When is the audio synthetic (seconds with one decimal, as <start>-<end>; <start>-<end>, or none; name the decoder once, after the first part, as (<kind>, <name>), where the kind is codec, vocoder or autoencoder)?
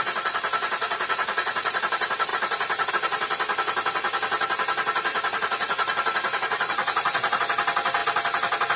0.8-1.8 (vocoder, Vocos); 5.1-7.4